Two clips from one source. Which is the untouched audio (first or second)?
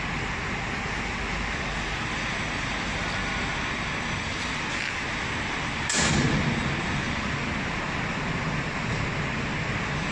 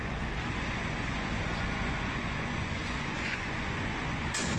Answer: first